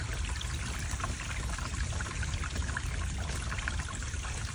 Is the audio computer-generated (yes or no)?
yes